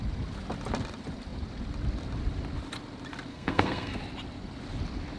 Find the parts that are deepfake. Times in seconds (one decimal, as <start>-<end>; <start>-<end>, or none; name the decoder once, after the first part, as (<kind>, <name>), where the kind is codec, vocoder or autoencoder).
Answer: 3.3-4.0 (codec, SNAC)

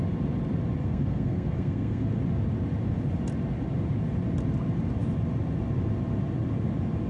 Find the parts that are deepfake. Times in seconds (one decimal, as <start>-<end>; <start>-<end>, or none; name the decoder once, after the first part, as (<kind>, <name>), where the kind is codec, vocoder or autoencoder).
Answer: 0.8-2.2 (codec, SNAC)